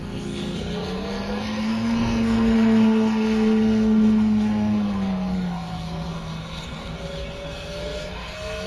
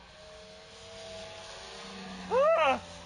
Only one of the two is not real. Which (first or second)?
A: first